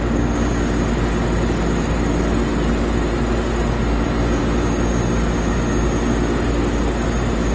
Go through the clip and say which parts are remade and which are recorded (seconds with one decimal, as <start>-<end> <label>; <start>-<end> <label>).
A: 0.0-7.5 recorded

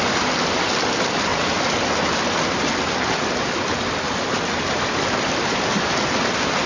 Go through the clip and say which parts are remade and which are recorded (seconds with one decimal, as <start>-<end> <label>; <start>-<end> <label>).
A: 0.0-6.7 recorded

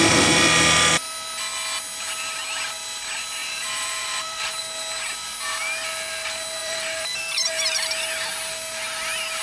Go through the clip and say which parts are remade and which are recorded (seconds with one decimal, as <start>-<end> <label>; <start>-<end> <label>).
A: 0.0-3.4 recorded; 3.4-4.5 remade; 4.5-6.6 recorded; 6.6-7.5 remade; 7.5-9.4 recorded

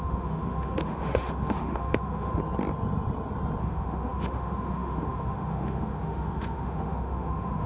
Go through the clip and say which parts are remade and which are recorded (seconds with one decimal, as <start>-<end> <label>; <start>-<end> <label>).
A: 0.0-2.4 remade; 2.4-3.6 recorded; 3.6-7.7 remade

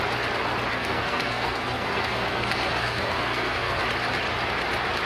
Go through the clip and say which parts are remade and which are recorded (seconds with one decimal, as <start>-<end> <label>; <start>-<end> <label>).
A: 0.0-0.7 recorded; 0.7-3.8 remade; 3.8-5.1 recorded

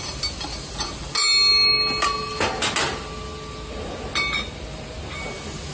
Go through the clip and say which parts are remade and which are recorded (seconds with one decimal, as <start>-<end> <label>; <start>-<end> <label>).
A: 0.0-5.7 recorded